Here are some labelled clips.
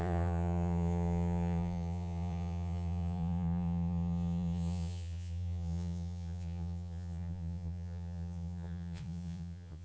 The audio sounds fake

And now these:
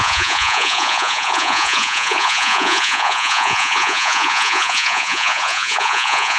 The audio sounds fake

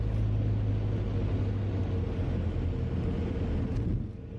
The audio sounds real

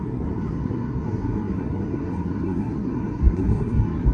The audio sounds fake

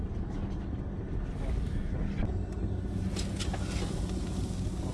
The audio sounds real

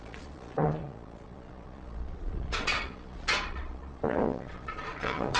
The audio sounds fake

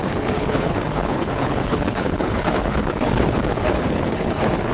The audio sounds fake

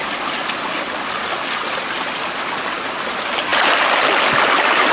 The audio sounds real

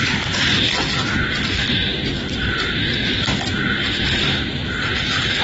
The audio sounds real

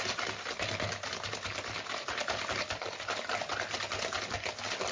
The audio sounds real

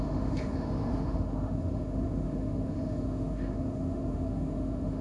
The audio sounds fake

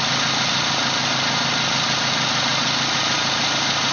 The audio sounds real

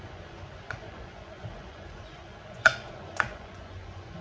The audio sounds fake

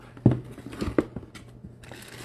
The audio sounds real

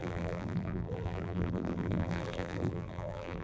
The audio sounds fake